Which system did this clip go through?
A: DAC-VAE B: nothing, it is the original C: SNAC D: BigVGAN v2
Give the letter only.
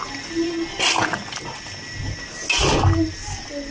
B